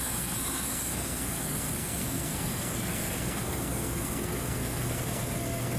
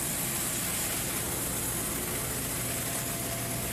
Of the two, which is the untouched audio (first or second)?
second